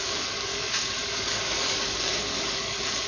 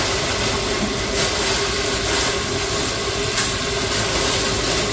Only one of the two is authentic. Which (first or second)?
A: second